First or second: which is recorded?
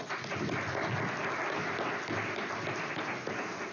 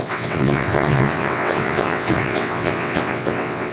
first